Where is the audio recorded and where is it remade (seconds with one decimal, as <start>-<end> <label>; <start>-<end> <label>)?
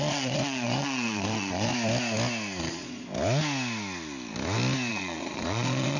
0.0-1.7 remade; 1.7-2.6 recorded; 2.6-3.1 remade; 3.1-4.9 recorded; 4.9-6.0 remade